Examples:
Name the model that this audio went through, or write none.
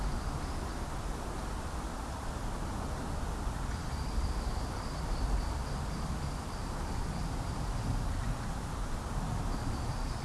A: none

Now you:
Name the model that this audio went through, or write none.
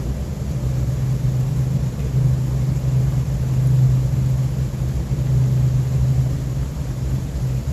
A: none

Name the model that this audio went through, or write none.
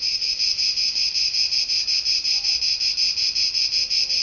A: none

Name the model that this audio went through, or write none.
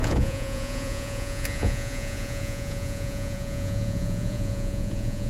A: vocoder, Vocos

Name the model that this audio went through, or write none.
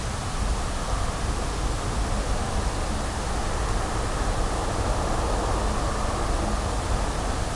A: none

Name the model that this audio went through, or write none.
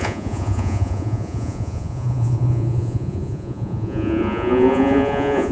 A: vocoder, Vocos